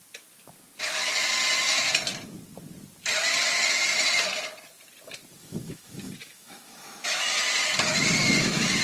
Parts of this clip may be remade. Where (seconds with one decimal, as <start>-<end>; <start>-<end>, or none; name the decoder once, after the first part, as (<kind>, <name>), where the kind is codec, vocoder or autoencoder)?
5.4-7.2 (autoencoder, DAC-VAE); 8.2-8.8